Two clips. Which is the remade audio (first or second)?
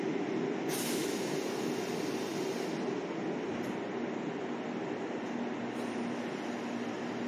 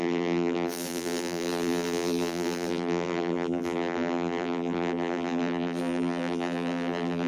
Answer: second